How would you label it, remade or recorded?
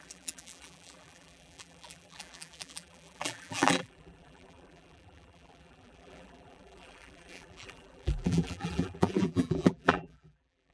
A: remade